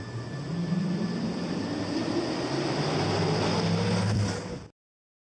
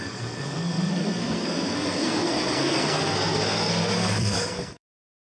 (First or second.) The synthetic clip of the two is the second